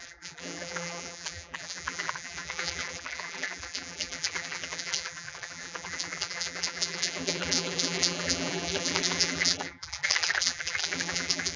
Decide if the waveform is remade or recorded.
remade